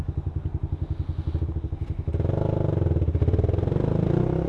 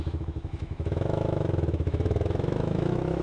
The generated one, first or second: second